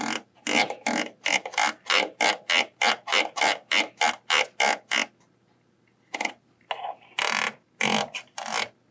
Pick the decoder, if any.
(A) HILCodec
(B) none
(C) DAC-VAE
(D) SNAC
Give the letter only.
B